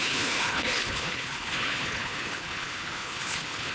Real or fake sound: fake